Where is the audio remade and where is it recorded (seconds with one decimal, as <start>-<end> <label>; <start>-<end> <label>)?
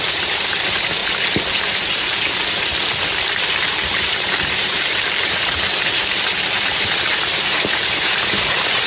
0.0-1.0 remade; 1.0-1.5 recorded; 1.5-2.7 remade; 2.7-3.5 recorded; 3.5-8.9 remade